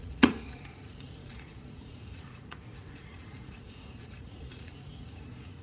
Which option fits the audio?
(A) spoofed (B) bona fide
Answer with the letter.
A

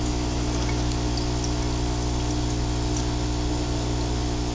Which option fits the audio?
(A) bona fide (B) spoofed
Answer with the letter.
A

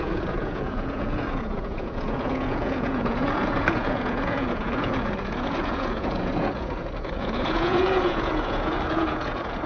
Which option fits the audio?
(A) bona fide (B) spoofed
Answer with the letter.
B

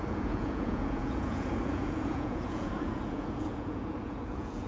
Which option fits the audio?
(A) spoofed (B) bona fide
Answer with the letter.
A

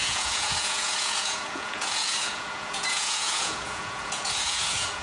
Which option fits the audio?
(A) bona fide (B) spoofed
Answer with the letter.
B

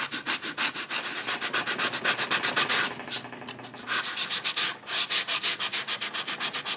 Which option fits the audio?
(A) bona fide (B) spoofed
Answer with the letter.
A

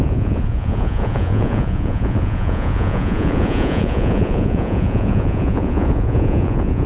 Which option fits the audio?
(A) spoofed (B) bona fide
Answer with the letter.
A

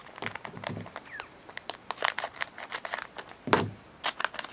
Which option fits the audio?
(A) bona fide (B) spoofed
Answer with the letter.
A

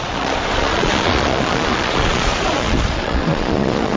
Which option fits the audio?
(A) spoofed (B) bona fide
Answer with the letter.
A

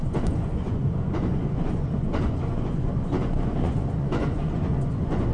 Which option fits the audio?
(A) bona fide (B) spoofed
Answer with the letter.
B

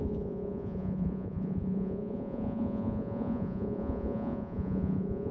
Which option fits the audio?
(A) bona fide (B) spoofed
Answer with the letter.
B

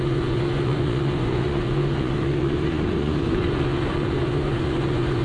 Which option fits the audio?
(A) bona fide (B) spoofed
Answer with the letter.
B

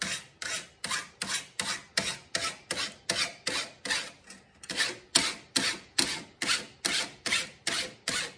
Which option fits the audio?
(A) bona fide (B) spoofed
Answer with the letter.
A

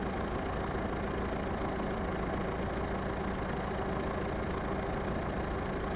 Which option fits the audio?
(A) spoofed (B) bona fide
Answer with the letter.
B